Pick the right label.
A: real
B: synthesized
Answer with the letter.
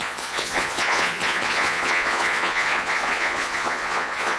B